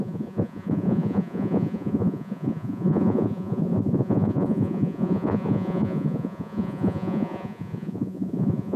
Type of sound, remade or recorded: remade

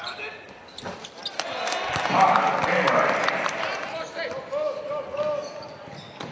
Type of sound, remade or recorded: recorded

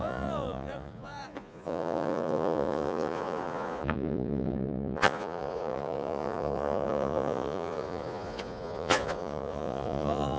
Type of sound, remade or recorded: remade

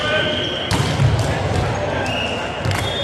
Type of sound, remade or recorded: recorded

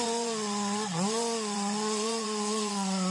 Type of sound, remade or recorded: remade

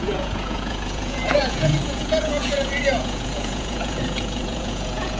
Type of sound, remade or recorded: remade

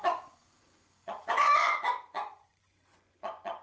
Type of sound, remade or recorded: remade